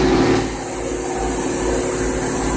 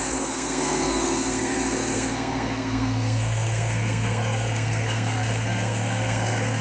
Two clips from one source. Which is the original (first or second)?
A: first